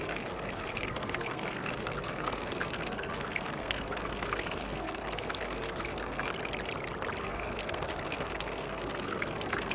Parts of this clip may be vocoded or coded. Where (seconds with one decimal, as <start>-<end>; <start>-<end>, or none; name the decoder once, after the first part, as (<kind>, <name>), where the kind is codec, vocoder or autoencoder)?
0.0-6.3 (codec, SNAC); 7.2-9.7